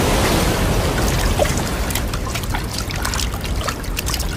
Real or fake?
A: real